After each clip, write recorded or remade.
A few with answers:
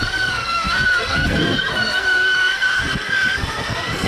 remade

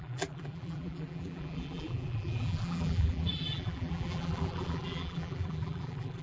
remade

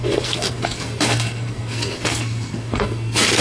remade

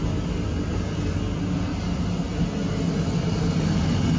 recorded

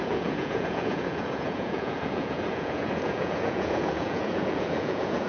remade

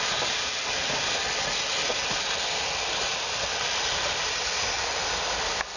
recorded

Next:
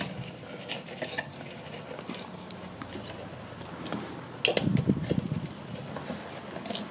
recorded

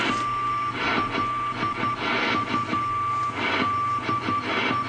recorded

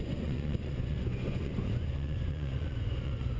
remade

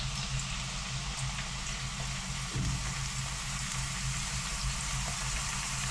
recorded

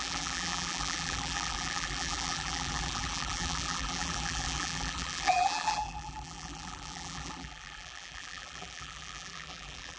remade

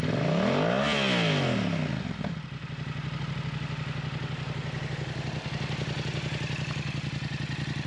recorded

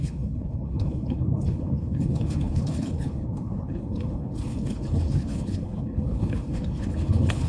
remade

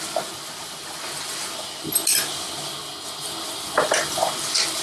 recorded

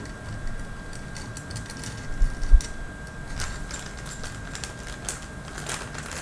recorded